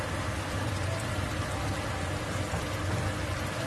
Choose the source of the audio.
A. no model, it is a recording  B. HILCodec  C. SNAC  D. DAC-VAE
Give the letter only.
A